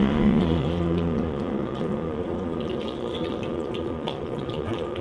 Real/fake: fake